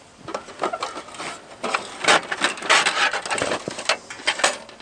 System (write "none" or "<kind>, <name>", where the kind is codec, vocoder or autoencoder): none